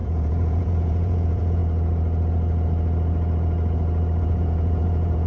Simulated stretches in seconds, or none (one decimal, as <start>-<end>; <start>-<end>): 0.0-1.6; 4.2-5.3